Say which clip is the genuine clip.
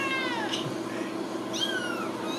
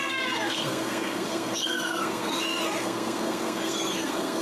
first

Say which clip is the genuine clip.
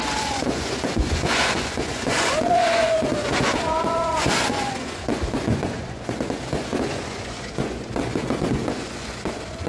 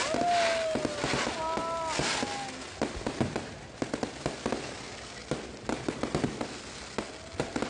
second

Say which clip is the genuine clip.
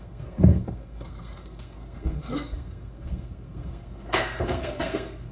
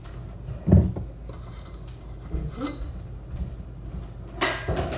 second